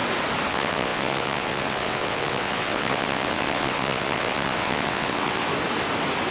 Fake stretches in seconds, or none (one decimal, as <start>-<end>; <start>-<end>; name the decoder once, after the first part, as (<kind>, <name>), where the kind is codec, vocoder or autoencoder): 0.5-5.5 (vocoder, WaveNeXt)

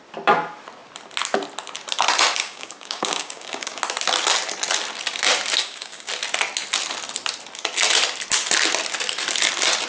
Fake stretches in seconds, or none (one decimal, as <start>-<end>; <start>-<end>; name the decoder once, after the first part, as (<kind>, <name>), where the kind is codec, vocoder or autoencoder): 2.4-3.8 (codec, DAC); 5.6-6.1

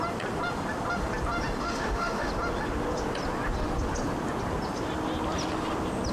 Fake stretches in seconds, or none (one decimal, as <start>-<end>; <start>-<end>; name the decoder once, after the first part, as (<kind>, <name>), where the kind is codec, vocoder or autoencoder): 1.6-2.3 (autoencoder, DAC-VAE)

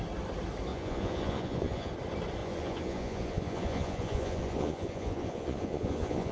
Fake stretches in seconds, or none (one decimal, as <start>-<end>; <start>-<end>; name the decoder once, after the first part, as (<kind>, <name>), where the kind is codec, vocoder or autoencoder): 0.7-1.9 (vocoder, Vocos); 2.4-6.3